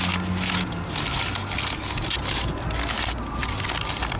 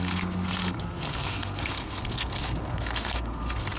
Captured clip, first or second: first